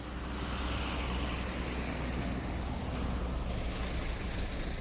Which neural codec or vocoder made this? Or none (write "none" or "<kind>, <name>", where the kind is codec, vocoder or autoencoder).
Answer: none